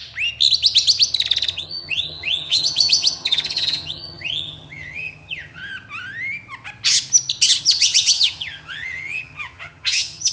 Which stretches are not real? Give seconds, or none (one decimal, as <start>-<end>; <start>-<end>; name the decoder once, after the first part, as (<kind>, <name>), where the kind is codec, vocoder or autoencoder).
1.5-5.6 (vocoder, HiFi-GAN); 7.6-10.3